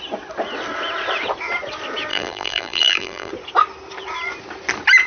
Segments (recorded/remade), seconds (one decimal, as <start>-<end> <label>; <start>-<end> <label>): 0.0-2.1 recorded; 2.1-3.3 remade; 3.3-5.1 recorded